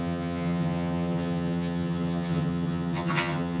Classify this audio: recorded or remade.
remade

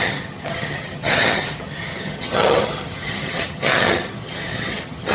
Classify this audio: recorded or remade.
remade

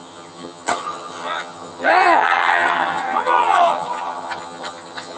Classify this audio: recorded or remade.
remade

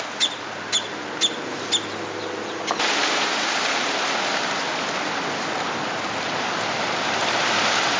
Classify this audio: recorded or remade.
recorded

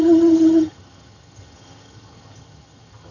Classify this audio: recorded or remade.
remade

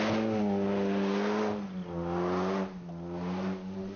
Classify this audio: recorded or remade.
recorded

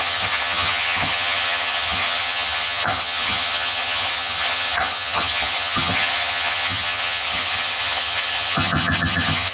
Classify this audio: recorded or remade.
remade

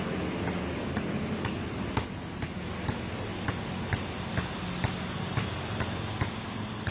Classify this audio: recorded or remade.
recorded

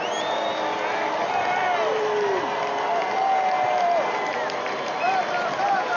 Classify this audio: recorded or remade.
recorded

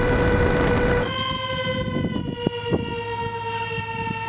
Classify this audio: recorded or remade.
recorded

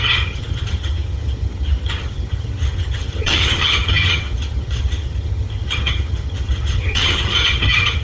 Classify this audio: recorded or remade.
remade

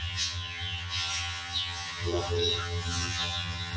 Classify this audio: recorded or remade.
remade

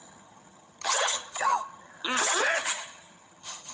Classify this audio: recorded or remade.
remade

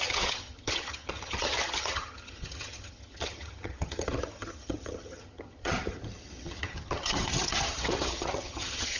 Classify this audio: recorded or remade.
remade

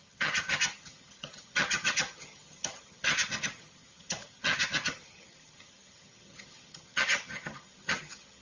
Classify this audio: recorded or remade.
remade